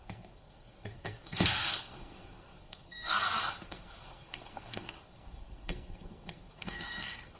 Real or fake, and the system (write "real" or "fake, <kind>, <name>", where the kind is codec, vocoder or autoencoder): fake, codec, SNAC